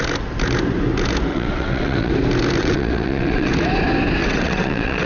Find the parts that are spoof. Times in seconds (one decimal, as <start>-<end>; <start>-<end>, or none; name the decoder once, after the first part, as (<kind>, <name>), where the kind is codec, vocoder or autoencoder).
1.3-2.1 (vocoder, WaveNeXt); 2.6-3.5; 4.2-5.1